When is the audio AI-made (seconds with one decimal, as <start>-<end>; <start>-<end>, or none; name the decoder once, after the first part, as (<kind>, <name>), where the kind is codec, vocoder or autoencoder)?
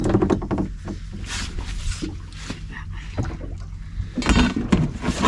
none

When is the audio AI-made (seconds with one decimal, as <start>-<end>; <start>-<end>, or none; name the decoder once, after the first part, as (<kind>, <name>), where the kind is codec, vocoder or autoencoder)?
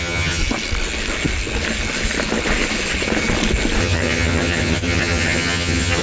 0.0-0.4 (vocoder, HiFi-GAN); 3.8-6.0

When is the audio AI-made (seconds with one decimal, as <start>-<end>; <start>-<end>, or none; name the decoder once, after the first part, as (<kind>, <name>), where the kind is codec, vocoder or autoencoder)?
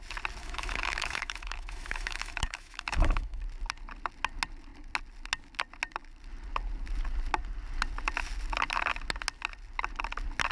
0.4-3.4 (autoencoder, DAC-VAE)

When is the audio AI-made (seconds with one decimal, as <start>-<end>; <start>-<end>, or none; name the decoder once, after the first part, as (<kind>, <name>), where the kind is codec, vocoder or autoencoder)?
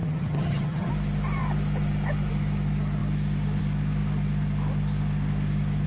0.0-0.9 (vocoder, HiFi-GAN)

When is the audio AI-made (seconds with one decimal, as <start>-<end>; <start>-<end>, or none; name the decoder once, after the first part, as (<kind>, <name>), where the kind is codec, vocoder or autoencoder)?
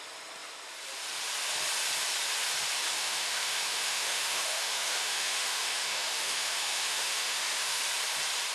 2.9-7.8 (autoencoder, DAC-VAE)